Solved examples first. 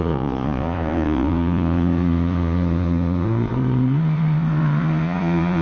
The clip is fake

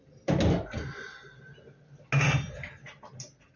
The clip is real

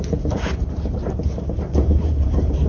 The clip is fake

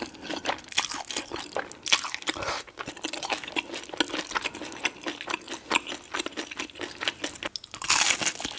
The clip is real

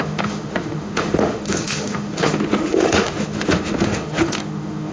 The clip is fake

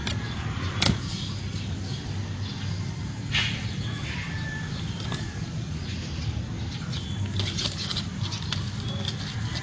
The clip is real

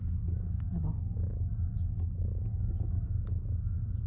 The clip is real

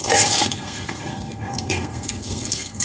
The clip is fake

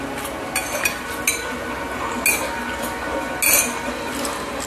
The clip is real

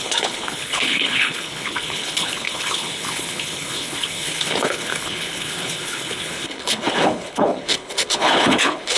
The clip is fake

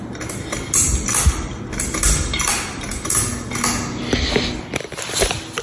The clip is real